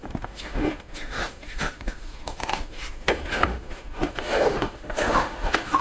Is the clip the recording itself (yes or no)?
no